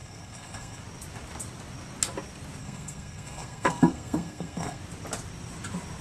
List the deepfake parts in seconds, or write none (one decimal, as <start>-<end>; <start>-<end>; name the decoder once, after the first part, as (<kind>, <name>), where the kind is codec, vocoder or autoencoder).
0.0-0.8 (codec, SNAC); 2.6-4.8